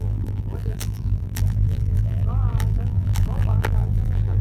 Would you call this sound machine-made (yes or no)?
yes